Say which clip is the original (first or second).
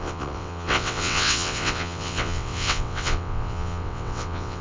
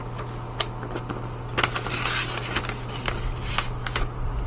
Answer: second